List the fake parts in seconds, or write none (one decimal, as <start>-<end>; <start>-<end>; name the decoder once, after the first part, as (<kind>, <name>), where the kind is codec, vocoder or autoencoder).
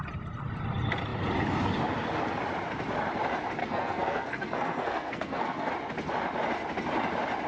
3.6-5.7 (codec, SNAC)